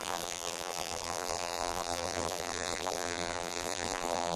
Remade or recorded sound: remade